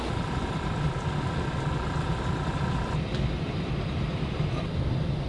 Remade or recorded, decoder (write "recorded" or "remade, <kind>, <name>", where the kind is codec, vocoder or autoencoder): remade, vocoder, BigVGAN v2